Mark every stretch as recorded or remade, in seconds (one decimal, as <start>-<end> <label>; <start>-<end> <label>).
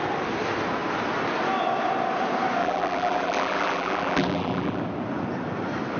0.0-2.6 recorded; 2.6-4.8 remade; 4.8-6.0 recorded